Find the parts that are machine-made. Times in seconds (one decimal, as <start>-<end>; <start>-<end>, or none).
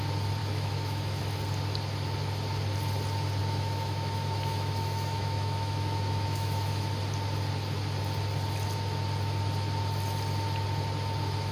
0.4-1.2; 3.4-6.9